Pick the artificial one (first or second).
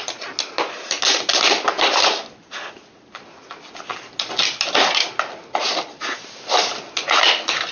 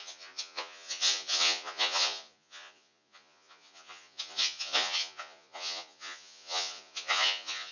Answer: second